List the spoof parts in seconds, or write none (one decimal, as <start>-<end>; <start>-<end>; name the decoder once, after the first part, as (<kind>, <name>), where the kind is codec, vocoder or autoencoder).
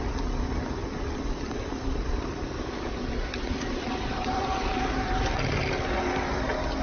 0.8-4.9 (vocoder, BigVGAN v2)